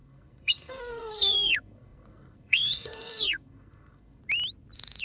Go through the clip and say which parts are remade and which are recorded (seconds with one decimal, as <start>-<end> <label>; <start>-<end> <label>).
0.0-4.2 remade; 4.2-5.0 recorded